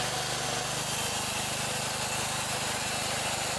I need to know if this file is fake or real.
real